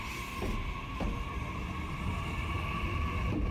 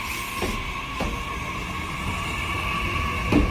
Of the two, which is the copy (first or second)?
first